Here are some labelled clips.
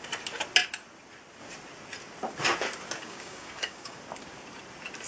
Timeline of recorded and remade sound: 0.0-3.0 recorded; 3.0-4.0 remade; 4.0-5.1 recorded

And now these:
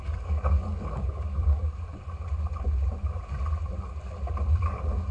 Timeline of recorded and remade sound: 0.0-1.6 remade; 1.6-4.6 recorded; 4.6-5.1 remade

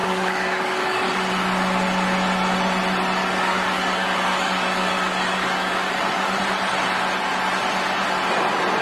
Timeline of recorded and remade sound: 0.0-1.2 remade; 1.2-3.2 recorded; 3.2-6.4 remade; 6.4-8.8 recorded

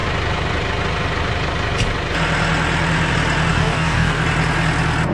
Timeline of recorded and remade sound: 0.0-3.5 recorded; 3.5-4.2 remade; 4.2-5.1 recorded

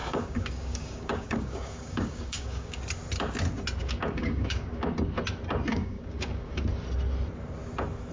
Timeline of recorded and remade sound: 0.0-2.8 remade; 2.8-3.8 recorded; 3.8-4.9 remade; 4.9-5.7 recorded; 5.7-6.6 remade; 6.6-8.1 recorded

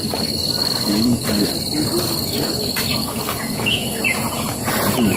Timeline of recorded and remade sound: 0.0-0.6 recorded; 0.6-1.5 remade; 1.5-3.0 recorded; 3.0-4.0 remade; 4.0-5.2 recorded